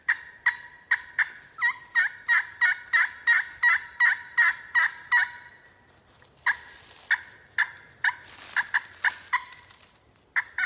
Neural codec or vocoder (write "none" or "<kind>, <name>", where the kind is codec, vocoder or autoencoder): none